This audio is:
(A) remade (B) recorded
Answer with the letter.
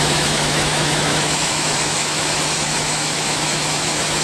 A